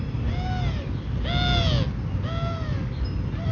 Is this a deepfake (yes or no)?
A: no